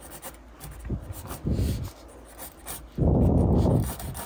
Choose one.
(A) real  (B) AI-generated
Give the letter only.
A